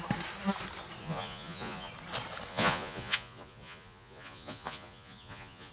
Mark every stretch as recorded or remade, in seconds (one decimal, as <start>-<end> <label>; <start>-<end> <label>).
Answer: 0.0-1.0 recorded; 1.0-1.9 remade; 1.9-2.5 recorded; 2.5-5.7 remade